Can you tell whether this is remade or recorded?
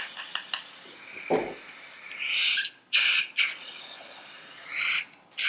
recorded